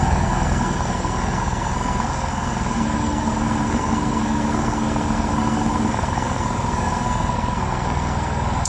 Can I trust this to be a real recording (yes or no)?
no